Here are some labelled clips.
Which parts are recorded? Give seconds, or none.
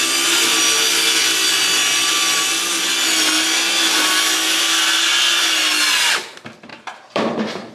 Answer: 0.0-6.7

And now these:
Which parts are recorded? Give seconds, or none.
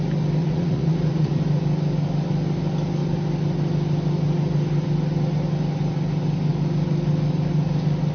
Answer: 0.0-0.4; 1.4-8.1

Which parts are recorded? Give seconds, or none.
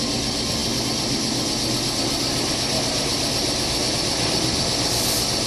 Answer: 0.0-5.5